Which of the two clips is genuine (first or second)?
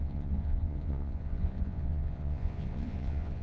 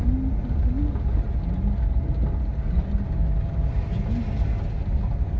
second